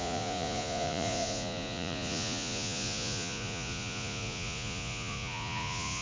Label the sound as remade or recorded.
remade